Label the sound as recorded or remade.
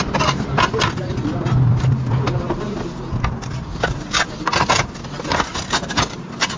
recorded